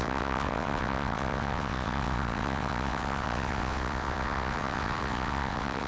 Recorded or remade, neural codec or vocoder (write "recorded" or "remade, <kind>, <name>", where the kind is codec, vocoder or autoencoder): remade, vocoder, WaveNeXt